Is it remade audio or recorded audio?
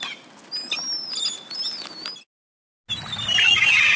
recorded